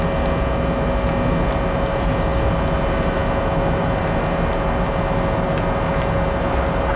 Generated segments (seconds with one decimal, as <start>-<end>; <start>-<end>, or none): none